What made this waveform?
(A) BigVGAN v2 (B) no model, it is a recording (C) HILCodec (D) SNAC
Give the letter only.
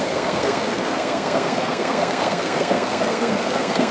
D